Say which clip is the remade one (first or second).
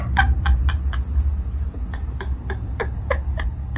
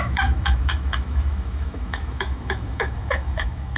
second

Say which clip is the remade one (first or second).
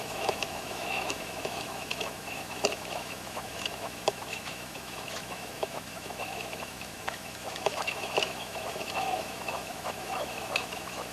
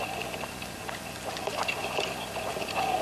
first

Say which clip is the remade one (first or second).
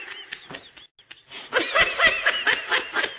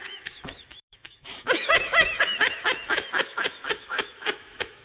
second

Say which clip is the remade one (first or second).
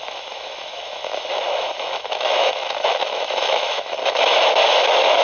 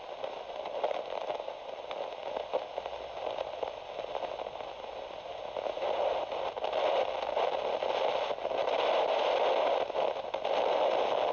first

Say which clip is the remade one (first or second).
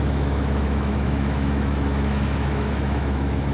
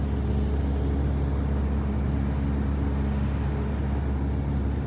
first